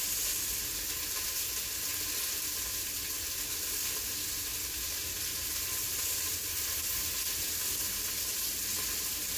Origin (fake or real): real